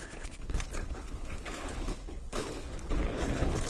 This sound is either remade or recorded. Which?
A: remade